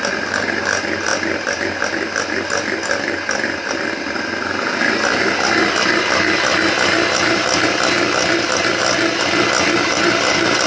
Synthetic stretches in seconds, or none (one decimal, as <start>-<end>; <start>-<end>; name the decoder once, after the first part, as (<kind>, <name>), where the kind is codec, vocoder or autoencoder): none